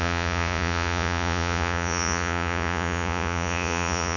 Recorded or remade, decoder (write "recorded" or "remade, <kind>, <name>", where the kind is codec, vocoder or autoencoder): remade, vocoder, Vocos